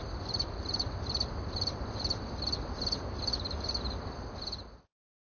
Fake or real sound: real